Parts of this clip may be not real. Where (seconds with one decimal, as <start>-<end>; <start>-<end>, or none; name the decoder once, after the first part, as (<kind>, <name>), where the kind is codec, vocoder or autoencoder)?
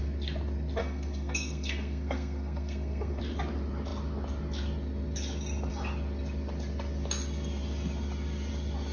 0.8-3.2 (codec, SNAC)